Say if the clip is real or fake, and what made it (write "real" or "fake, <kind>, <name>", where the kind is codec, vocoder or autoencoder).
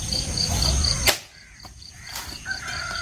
real